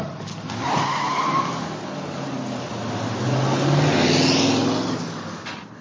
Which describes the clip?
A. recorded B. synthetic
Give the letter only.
A